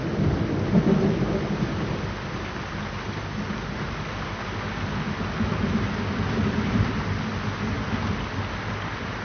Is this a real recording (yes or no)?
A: yes